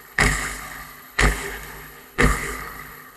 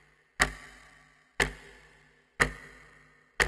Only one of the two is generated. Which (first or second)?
first